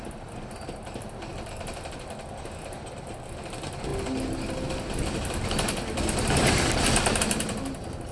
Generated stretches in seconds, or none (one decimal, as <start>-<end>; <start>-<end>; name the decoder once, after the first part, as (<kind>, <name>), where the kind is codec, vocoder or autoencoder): none